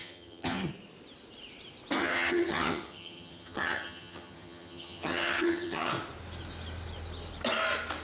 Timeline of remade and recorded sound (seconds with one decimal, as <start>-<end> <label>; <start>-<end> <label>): 0.0-0.7 remade; 0.7-2.0 recorded; 2.0-5.9 remade; 5.9-8.0 recorded